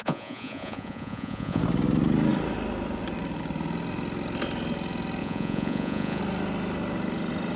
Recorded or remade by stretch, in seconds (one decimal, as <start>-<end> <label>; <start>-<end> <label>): 0.0-1.6 remade; 1.6-5.2 recorded; 5.2-6.2 remade; 6.2-7.6 recorded